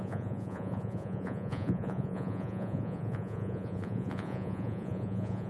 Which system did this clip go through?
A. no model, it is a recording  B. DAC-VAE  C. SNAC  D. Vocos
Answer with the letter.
D